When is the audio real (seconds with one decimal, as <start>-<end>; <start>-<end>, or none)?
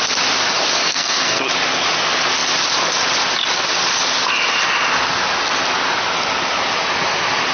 0.0-0.8; 1.4-7.5